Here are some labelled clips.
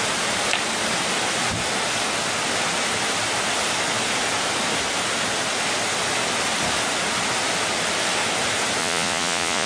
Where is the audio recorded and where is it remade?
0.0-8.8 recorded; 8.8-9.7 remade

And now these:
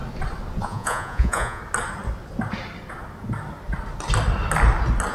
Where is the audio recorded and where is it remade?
0.0-0.6 recorded; 0.6-1.6 remade; 1.6-5.1 recorded

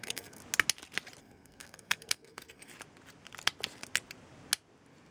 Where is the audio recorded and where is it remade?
0.0-0.4 remade; 0.4-1.2 recorded; 1.2-2.7 remade; 2.7-5.1 recorded

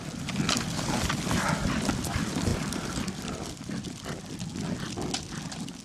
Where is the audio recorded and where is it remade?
0.0-5.8 recorded

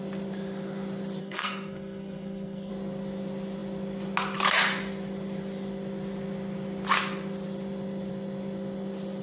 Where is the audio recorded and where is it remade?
0.0-1.2 recorded; 1.2-2.7 remade; 2.7-9.2 recorded